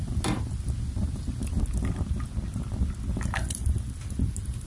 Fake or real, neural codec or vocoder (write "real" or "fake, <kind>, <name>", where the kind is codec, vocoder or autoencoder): real